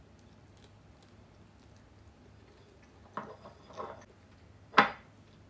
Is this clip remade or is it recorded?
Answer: recorded